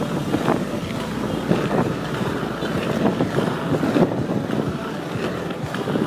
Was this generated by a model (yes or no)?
no